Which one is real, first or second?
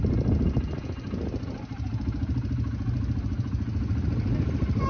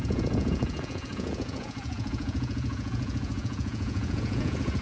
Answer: first